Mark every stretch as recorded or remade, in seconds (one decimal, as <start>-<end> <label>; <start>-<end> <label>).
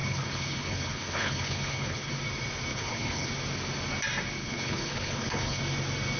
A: 0.0-2.1 remade; 2.1-2.7 recorded; 2.7-3.3 remade; 3.3-4.4 recorded; 4.4-5.6 remade; 5.6-6.2 recorded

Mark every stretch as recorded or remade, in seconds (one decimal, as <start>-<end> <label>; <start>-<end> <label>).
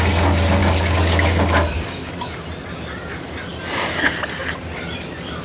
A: 0.0-0.6 recorded; 0.6-2.1 remade; 2.1-5.4 recorded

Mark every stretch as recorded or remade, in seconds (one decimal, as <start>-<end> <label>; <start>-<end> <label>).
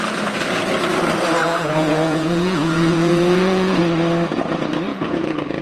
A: 0.0-1.4 recorded; 1.4-3.8 remade; 3.8-4.9 recorded; 4.9-5.6 remade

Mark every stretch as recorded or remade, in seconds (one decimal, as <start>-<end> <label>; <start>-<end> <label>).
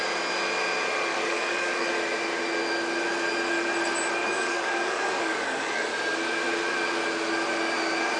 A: 0.0-1.1 recorded; 1.1-1.9 remade; 1.9-4.2 recorded; 4.2-5.9 remade; 5.9-8.2 recorded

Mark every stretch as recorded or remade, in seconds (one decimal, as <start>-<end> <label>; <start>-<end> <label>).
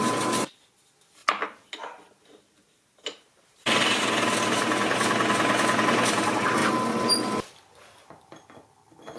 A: 0.0-1.2 recorded; 1.2-4.0 remade; 4.0-9.2 recorded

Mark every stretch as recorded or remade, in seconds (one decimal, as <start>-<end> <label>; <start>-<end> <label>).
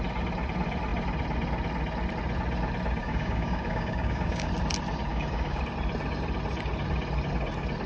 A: 0.0-3.0 recorded; 3.0-4.5 remade; 4.5-5.1 recorded; 5.1-5.6 remade; 5.6-7.9 recorded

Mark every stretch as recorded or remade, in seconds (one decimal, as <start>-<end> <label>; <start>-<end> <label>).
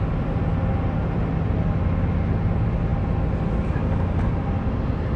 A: 0.0-5.2 recorded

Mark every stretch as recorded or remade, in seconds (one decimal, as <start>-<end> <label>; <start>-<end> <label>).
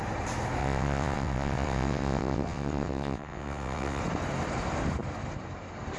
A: 0.0-0.6 recorded; 0.6-4.0 remade; 4.0-6.0 recorded